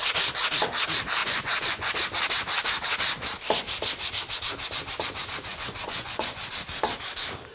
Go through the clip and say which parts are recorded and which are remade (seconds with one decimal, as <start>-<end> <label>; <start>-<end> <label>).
0.0-1.2 recorded; 1.2-1.9 remade; 1.9-5.5 recorded; 5.5-6.5 remade; 6.5-7.5 recorded